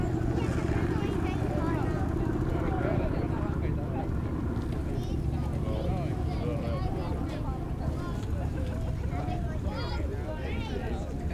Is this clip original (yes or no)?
yes